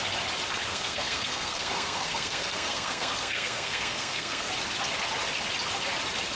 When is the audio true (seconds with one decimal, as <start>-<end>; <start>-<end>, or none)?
0.0-0.7; 4.5-6.4